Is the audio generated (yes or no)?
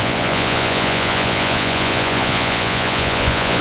yes